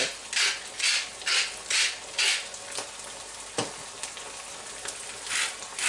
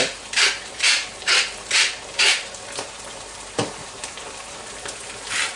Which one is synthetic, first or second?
second